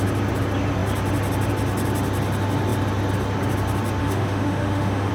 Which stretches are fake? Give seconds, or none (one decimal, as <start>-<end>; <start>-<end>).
4.0-5.1